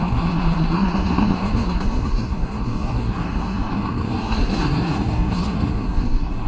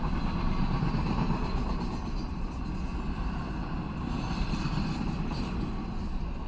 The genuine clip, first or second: second